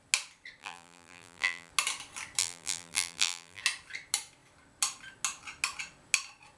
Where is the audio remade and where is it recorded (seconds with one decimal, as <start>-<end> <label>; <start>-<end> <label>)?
0.0-0.6 recorded; 0.6-1.7 remade; 1.7-2.4 recorded; 2.4-3.6 remade; 3.6-6.6 recorded